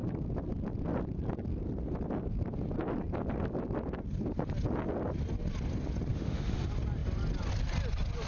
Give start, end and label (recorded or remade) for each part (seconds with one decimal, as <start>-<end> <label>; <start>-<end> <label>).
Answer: 0.0-6.1 recorded; 6.1-6.6 remade; 6.6-8.3 recorded